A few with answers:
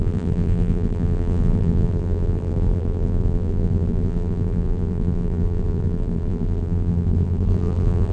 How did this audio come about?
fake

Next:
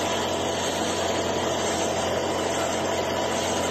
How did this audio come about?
real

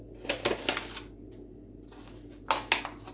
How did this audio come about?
real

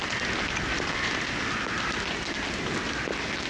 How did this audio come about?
real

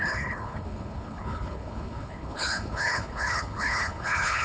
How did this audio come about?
fake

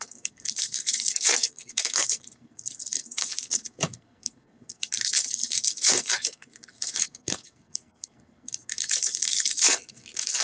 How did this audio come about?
fake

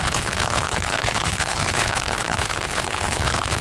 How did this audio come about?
fake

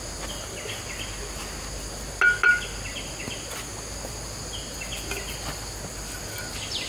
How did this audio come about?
real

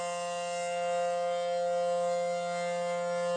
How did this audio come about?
real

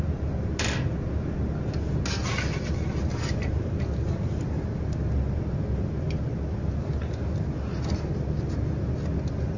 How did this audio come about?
real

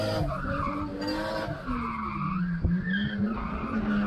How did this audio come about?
real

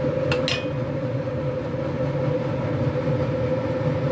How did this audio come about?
real